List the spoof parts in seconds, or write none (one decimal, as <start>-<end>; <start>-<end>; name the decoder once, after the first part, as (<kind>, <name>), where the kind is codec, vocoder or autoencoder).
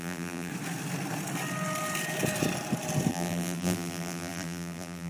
0.0-0.5 (vocoder, BigVGAN v2); 3.1-5.1